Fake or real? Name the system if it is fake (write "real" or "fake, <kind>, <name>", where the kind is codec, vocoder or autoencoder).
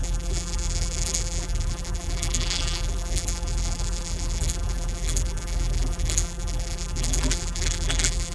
fake, vocoder, BigVGAN v2